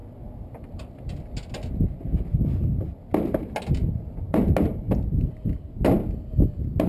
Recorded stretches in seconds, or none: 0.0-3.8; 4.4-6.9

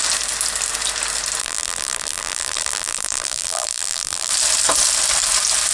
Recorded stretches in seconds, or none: 0.0-1.4; 4.3-5.7

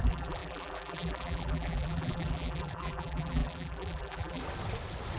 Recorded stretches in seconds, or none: 4.4-5.2

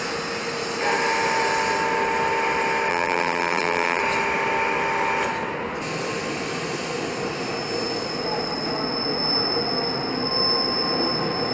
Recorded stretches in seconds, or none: 0.0-2.9; 4.0-11.5